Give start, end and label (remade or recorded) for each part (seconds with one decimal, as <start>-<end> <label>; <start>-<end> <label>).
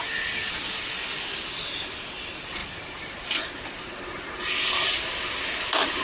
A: 0.0-6.0 recorded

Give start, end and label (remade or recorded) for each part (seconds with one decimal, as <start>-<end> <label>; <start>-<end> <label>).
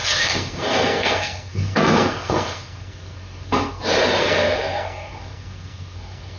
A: 0.0-3.8 remade; 3.8-4.2 recorded; 4.2-6.4 remade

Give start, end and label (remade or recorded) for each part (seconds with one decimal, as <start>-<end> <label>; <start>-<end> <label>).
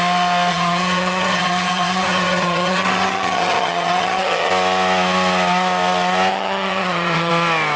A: 0.0-0.5 recorded; 0.5-4.5 remade; 4.5-6.3 recorded; 6.3-7.3 remade; 7.3-7.8 recorded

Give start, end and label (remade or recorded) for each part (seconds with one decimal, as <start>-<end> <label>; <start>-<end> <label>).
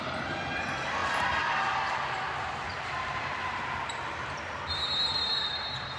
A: 0.0-1.0 remade; 1.0-2.1 recorded; 2.1-6.0 remade